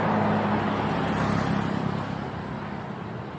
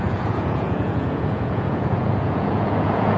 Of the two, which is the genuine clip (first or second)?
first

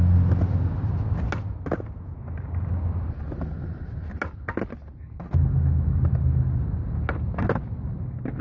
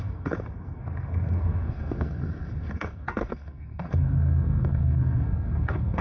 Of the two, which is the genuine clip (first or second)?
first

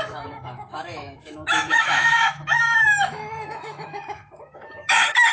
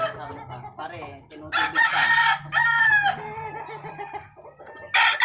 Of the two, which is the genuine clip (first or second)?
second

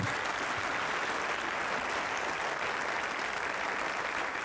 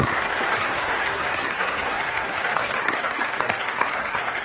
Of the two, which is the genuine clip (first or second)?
first